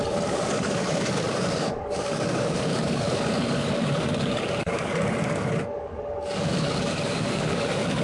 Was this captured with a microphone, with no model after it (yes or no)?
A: no